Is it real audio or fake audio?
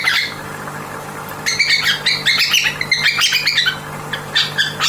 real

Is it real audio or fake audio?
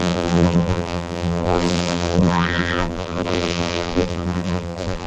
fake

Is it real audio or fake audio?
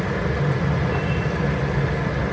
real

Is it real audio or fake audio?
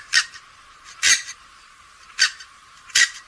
fake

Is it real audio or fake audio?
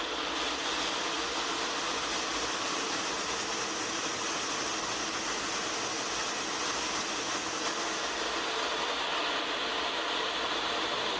real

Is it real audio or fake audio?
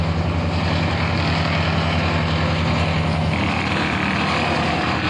real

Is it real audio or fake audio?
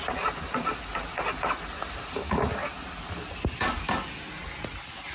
real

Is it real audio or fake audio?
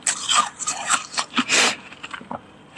fake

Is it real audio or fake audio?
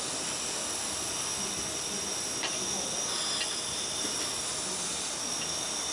real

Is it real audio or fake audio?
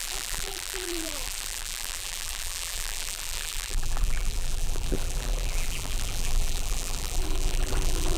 fake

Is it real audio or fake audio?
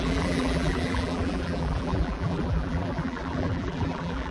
fake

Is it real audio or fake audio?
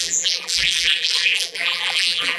fake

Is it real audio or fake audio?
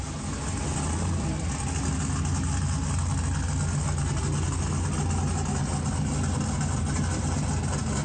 real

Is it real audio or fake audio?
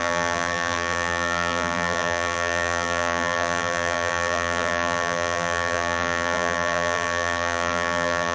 fake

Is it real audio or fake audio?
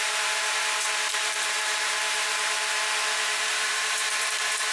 fake